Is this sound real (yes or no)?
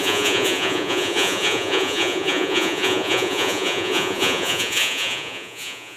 no